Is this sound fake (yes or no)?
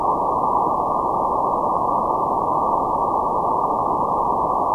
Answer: no